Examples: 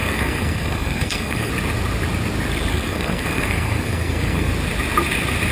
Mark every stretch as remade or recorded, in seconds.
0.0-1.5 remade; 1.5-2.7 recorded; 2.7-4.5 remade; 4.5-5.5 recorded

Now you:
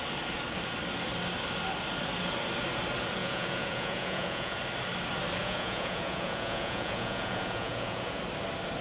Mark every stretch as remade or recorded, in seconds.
0.0-3.2 recorded; 3.2-4.6 remade; 4.6-5.4 recorded; 5.4-8.2 remade; 8.2-8.8 recorded

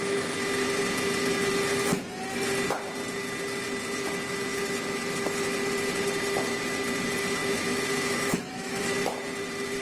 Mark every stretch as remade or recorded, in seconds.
0.0-7.4 recorded; 7.4-8.8 remade; 8.8-9.8 recorded

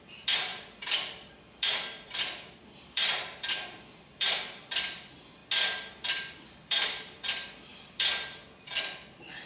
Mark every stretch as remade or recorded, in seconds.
0.0-5.4 remade; 5.4-6.6 recorded; 6.6-9.5 remade

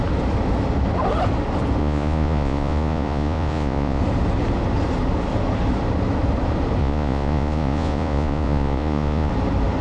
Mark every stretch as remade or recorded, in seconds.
0.0-1.8 recorded; 1.8-4.0 remade; 4.0-6.8 recorded; 6.8-9.3 remade; 9.3-9.8 recorded